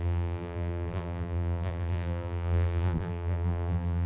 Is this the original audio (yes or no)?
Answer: no